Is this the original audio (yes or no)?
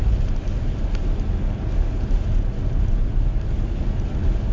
yes